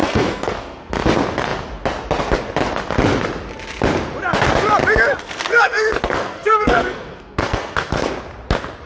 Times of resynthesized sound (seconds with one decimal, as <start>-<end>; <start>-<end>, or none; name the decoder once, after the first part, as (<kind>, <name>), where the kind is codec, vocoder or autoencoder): 0.0-0.9 (codec, SNAC); 5.2-8.1